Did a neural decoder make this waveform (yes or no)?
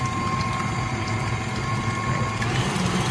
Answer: no